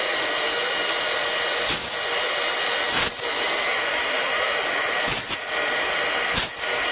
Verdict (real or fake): real